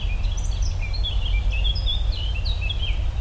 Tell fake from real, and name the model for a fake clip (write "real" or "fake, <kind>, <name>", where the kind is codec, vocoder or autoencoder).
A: real